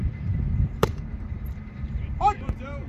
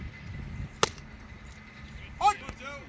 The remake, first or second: first